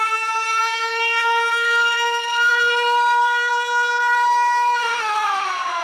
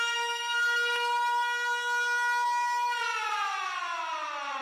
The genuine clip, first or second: second